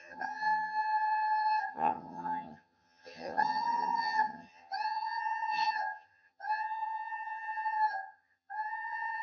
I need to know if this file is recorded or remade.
remade